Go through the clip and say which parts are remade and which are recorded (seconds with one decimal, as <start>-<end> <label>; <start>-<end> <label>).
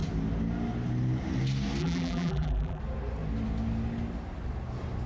0.0-1.8 recorded; 1.8-2.8 remade; 2.8-5.1 recorded